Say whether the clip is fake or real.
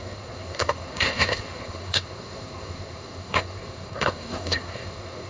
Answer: fake